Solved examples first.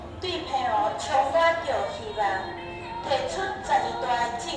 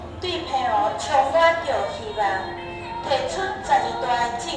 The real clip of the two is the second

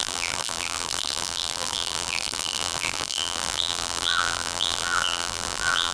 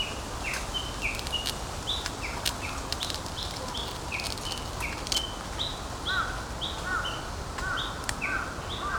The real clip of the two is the second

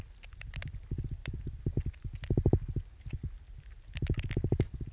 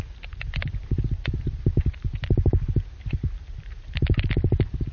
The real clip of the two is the first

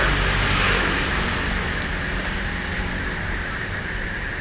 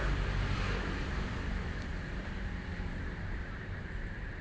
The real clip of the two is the first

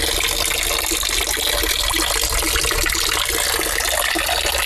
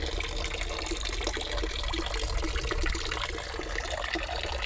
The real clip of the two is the first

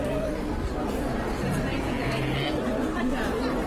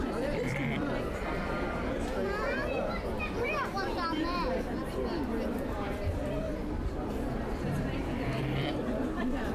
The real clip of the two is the first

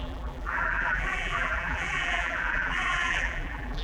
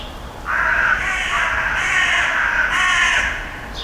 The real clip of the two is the second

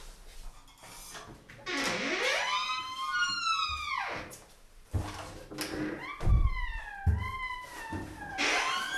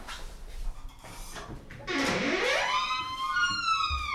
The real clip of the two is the first